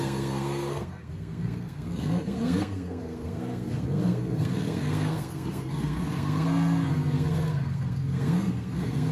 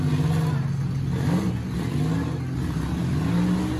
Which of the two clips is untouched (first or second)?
second